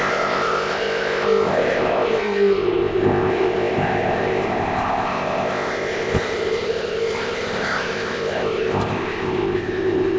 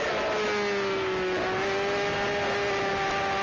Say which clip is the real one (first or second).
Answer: second